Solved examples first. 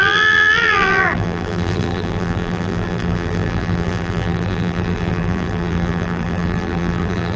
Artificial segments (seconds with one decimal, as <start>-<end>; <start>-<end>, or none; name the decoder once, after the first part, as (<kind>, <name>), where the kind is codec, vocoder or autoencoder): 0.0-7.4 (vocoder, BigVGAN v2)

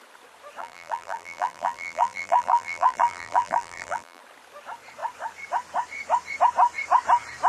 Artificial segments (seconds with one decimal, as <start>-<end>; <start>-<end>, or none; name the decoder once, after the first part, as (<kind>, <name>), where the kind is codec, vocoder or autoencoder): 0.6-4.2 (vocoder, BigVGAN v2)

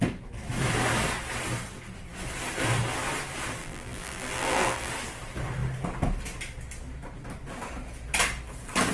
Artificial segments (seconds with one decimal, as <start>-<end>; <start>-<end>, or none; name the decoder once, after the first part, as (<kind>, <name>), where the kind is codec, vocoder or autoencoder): 3.6-4.9 (vocoder, BigVGAN v2)

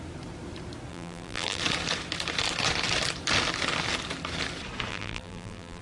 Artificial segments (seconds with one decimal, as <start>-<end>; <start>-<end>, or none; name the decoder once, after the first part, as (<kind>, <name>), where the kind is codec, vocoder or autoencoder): 0.9-1.6 (vocoder, BigVGAN v2); 4.9-5.8